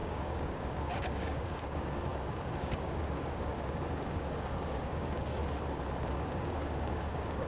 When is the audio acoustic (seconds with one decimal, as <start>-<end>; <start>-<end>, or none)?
5.4-6.1